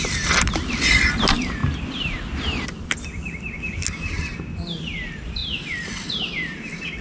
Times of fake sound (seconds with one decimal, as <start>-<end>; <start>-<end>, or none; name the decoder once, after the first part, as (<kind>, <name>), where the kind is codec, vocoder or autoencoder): none